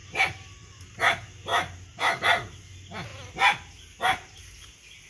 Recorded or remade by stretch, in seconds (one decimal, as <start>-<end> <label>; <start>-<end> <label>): 0.0-5.1 recorded